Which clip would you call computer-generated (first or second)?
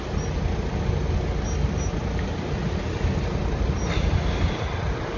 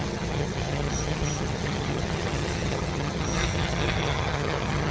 second